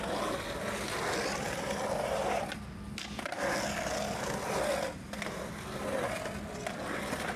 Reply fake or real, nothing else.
real